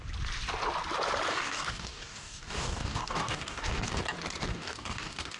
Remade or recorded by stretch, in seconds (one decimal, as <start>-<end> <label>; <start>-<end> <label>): 0.0-1.3 recorded; 1.3-4.0 remade; 4.0-4.5 recorded; 4.5-5.4 remade